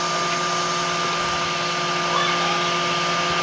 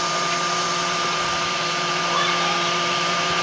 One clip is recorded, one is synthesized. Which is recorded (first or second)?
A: first